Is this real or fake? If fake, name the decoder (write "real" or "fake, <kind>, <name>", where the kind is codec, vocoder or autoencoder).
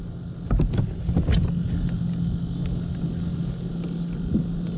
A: real